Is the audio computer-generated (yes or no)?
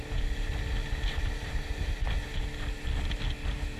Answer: no